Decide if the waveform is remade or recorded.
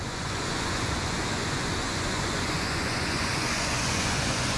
remade